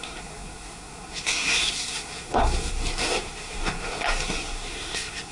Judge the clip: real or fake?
fake